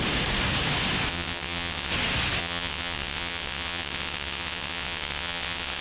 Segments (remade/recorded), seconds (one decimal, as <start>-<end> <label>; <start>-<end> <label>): 0.0-1.1 recorded; 1.1-1.9 remade; 1.9-2.4 recorded; 2.4-5.8 remade